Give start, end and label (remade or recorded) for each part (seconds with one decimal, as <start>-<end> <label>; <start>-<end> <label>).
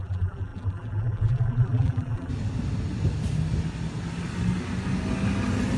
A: 0.0-2.3 remade; 2.3-5.8 recorded